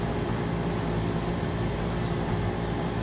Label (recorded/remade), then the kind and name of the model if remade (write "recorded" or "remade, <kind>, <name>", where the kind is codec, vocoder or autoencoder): recorded